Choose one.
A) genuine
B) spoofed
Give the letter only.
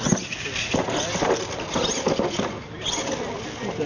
A